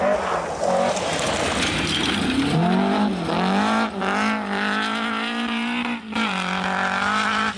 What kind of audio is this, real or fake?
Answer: real